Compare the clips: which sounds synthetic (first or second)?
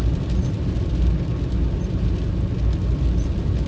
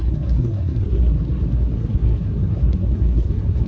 second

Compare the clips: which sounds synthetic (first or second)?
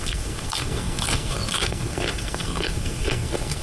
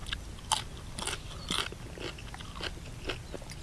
first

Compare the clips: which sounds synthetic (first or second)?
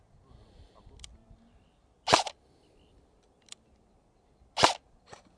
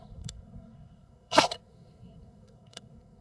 second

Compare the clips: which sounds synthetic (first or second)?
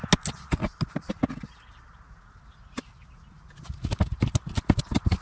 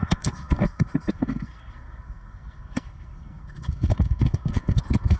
second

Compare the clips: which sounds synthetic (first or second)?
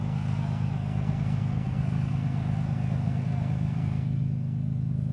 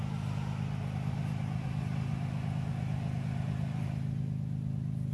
first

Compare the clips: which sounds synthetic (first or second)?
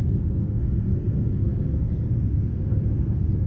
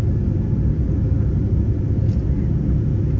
first